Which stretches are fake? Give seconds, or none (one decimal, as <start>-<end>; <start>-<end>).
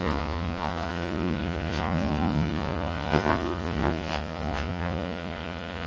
0.0-5.9